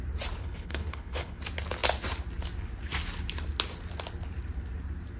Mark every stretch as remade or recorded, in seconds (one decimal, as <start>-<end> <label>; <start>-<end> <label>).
0.0-0.4 recorded; 0.4-1.4 remade; 1.4-5.2 recorded